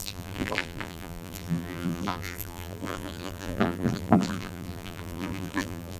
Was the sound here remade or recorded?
remade